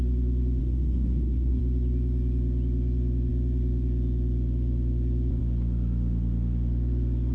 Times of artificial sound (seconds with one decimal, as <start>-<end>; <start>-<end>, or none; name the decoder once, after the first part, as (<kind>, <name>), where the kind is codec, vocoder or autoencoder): 0.6-1.6 (codec, SNAC)